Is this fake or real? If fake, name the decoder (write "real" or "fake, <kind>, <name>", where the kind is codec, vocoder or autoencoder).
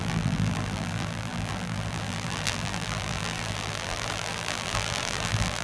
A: fake, vocoder, BigVGAN v2